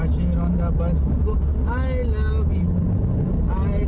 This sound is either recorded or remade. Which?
recorded